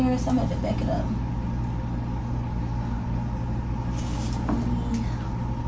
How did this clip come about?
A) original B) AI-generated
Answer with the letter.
A